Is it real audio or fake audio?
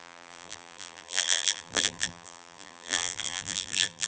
fake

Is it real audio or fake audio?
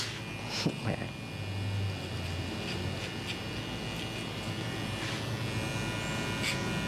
real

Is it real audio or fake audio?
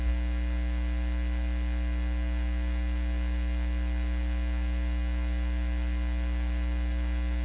real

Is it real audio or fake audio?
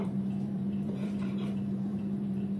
fake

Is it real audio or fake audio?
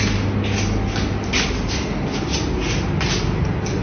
real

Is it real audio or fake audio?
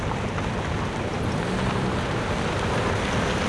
real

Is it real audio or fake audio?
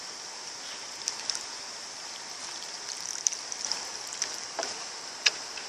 real